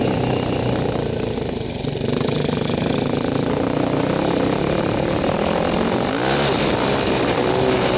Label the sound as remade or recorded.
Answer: recorded